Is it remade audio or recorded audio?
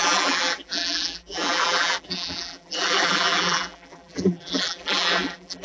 remade